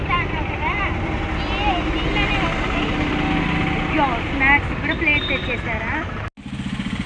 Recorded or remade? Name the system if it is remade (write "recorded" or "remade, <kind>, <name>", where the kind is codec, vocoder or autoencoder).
recorded